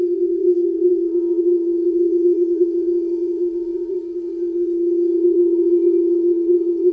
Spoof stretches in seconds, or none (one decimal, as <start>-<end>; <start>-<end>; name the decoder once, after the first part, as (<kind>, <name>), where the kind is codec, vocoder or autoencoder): 0.0-6.9 (vocoder, Vocos)